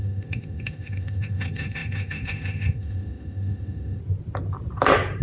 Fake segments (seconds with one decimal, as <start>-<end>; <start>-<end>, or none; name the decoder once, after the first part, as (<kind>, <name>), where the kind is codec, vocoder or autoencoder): 0.0-4.0 (autoencoder, DAC-VAE)